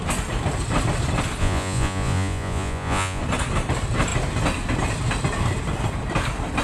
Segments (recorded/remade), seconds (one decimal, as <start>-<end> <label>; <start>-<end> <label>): 0.0-1.4 recorded; 1.4-3.2 remade; 3.2-6.6 recorded